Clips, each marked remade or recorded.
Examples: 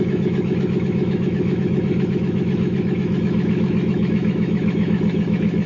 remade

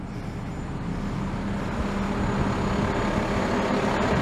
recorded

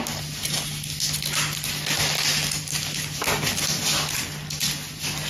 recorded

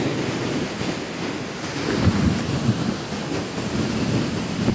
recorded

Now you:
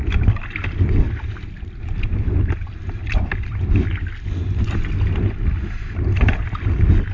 recorded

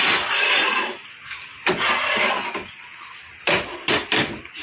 recorded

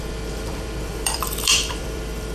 remade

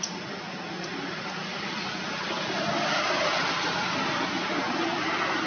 recorded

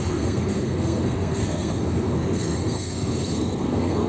remade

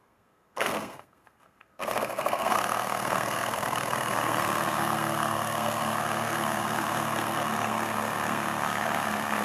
remade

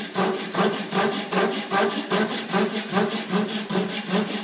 recorded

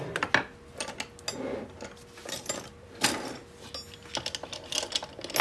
recorded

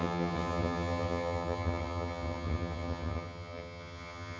remade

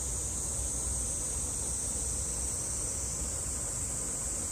recorded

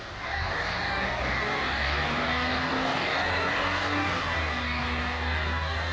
remade